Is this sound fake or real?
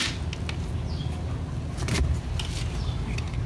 real